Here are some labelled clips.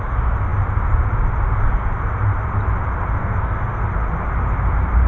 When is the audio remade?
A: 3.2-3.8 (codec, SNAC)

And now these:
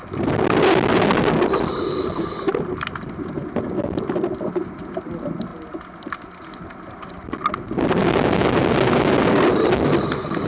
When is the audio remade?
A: none

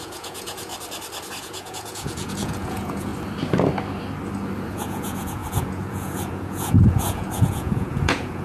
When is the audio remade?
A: 0.0-0.7 (vocoder, Vocos); 1.4-3.1; 4.7-8.4